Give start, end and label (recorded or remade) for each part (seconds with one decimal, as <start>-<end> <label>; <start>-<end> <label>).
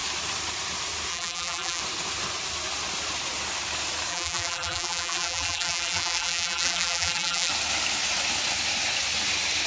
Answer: 0.0-1.1 recorded; 1.1-1.8 remade; 1.8-4.1 recorded; 4.1-7.5 remade; 7.5-9.7 recorded